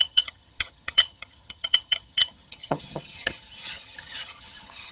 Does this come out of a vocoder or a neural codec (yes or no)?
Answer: yes